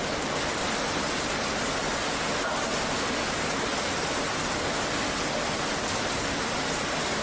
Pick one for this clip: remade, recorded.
recorded